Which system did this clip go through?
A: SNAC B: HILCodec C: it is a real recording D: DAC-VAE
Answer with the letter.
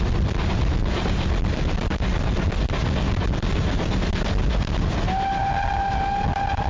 C